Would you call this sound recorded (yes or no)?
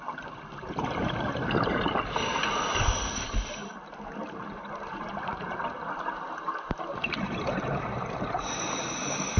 yes